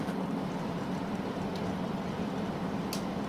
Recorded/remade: recorded